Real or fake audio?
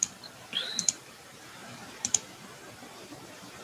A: fake